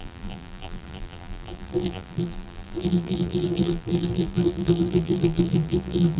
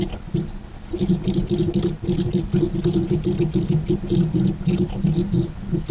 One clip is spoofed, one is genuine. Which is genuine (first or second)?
second